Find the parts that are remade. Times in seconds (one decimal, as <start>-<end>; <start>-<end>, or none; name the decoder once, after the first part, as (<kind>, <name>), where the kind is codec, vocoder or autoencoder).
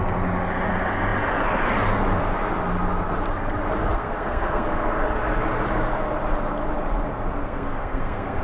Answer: 3.8-4.9 (codec, SNAC); 7.4-8.4